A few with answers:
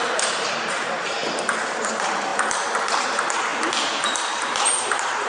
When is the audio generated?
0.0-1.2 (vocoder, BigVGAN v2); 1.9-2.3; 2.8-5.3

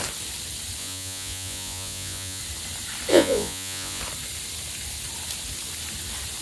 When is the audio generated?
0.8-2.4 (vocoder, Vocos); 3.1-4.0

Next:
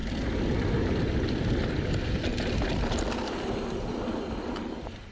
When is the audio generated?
none